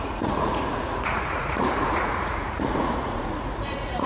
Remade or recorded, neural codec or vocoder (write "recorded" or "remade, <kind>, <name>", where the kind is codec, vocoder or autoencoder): remade, vocoder, Vocos